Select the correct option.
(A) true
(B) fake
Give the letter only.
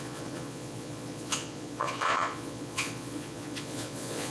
B